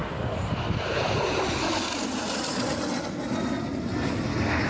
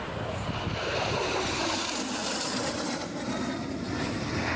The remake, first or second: second